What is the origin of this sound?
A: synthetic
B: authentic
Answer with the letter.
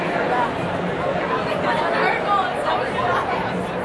B